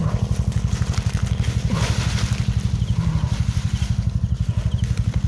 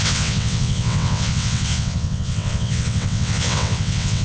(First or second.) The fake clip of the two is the second